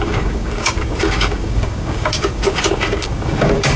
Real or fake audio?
fake